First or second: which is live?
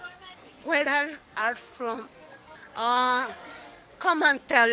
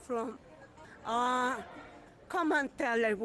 second